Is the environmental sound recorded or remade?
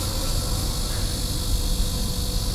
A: recorded